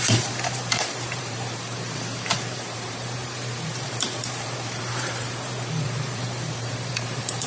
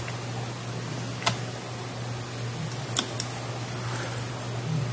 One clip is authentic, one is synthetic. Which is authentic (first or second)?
second